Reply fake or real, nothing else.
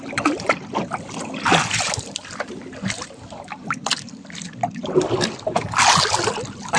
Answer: real